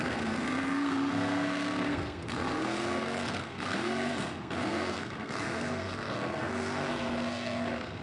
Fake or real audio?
fake